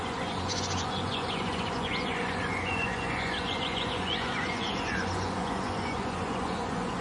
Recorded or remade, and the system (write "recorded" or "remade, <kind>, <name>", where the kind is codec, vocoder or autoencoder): remade, vocoder, Vocos